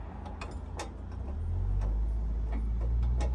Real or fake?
real